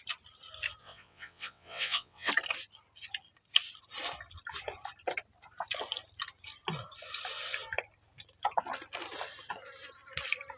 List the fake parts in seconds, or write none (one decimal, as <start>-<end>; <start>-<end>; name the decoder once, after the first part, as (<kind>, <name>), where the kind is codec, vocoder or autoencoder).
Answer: 0.8-2.3 (vocoder, WaveNeXt)